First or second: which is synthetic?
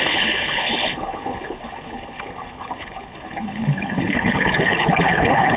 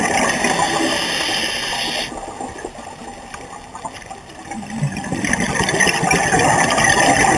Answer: first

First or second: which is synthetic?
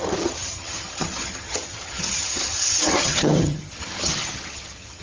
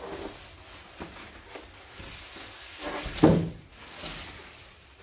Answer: first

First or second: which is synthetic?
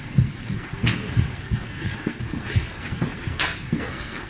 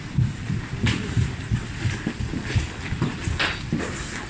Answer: first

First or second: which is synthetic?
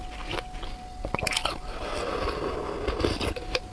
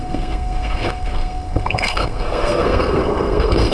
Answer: second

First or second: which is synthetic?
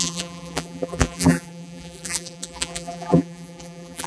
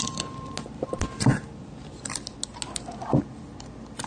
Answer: first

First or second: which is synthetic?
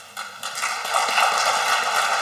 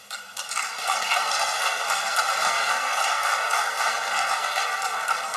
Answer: second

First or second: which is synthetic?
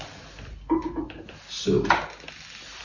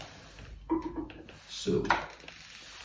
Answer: second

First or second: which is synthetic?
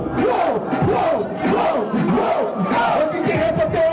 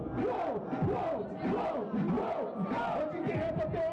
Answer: first